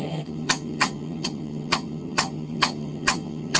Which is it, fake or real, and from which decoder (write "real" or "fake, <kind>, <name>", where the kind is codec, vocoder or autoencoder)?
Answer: fake, vocoder, HiFi-GAN